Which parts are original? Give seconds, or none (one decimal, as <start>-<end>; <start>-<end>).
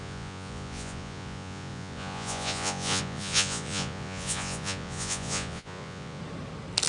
6.2-6.9